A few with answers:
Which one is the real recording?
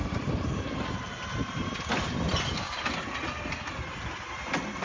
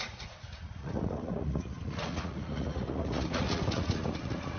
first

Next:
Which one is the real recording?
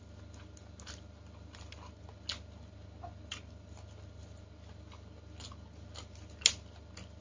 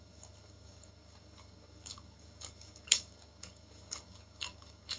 first